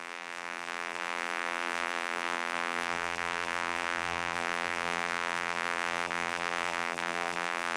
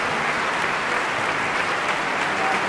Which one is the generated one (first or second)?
first